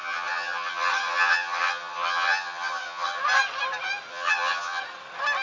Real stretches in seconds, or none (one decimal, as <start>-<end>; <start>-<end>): 3.2-4.1; 4.8-5.4